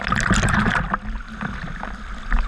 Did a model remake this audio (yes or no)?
no